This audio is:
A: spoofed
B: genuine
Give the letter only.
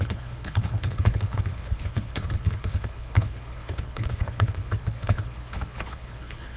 A